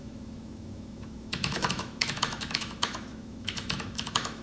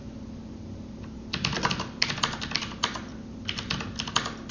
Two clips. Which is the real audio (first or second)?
second